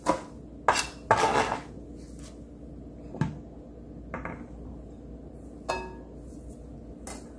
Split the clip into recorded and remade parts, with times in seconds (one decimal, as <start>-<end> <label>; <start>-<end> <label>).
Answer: 0.0-7.4 recorded